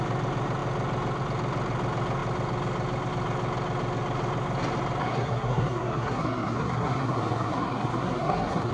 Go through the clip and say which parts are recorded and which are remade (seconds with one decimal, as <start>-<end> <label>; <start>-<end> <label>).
0.0-5.0 recorded; 5.0-8.7 remade